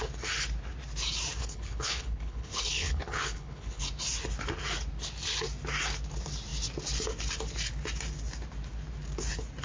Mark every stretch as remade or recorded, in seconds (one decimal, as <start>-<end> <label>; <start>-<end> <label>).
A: 0.0-1.4 recorded; 1.4-3.8 remade; 3.8-9.6 recorded